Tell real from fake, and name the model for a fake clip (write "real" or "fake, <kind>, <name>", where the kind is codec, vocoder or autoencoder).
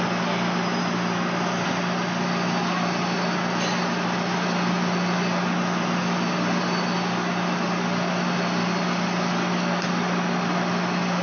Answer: real